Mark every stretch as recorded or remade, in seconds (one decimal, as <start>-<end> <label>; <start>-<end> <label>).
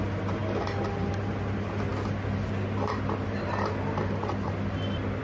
0.0-5.2 recorded